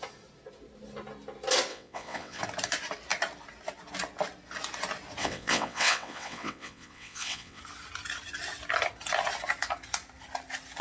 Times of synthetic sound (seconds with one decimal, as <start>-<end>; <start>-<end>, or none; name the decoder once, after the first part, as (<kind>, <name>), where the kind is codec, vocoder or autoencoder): 1.7-2.4 (vocoder, WaveNeXt); 5.2-7.6